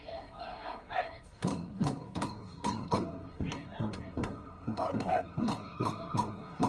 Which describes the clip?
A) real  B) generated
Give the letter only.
B